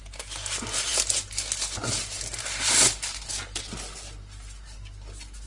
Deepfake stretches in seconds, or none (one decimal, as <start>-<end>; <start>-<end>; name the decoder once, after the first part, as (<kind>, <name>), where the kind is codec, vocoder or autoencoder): none